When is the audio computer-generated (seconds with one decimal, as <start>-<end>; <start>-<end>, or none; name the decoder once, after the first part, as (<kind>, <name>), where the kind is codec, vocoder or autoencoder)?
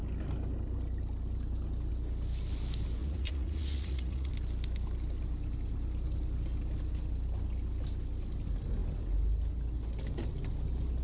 3.0-4.3 (vocoder, Vocos)